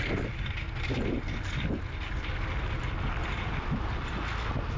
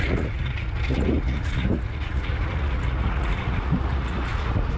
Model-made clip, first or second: second